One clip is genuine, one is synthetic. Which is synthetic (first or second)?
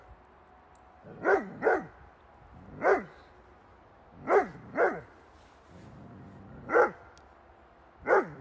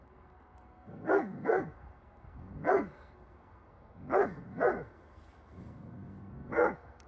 second